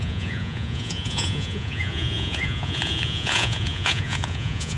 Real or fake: fake